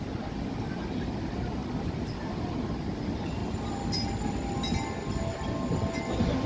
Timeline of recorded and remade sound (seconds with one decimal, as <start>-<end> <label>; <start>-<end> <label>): 0.0-1.6 recorded; 1.6-2.3 remade; 2.3-6.5 recorded